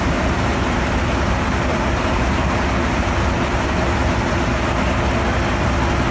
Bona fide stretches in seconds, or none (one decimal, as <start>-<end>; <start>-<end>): 0.0-1.7; 3.7-6.1